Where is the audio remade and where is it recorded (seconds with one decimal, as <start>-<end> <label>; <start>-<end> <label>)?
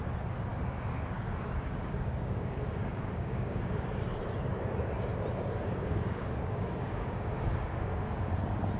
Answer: 0.0-0.5 recorded; 0.5-3.9 remade; 3.9-5.3 recorded; 5.3-8.3 remade; 8.3-8.8 recorded